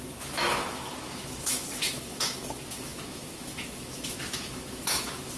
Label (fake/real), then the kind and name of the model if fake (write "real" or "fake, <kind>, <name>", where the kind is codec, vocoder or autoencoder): fake, autoencoder, DAC-VAE